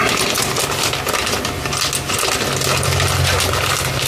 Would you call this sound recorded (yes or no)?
yes